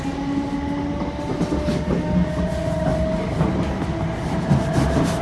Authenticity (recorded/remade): recorded